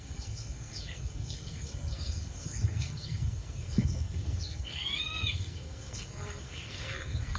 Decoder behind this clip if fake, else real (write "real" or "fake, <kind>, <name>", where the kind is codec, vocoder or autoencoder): fake, codec, SNAC